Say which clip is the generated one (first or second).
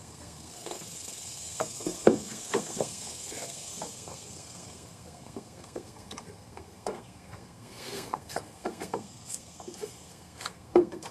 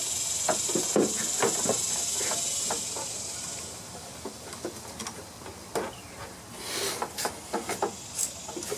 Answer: first